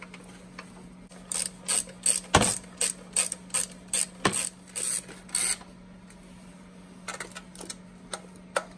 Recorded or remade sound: recorded